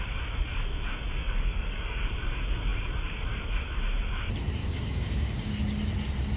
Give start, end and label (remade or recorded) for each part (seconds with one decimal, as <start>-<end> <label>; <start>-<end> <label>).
0.0-1.2 recorded; 1.2-2.1 remade; 2.1-4.6 recorded; 4.6-5.5 remade; 5.5-6.4 recorded